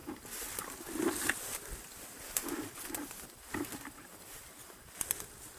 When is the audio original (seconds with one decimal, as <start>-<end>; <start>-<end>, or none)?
0.0-5.6